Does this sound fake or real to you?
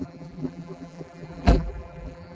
fake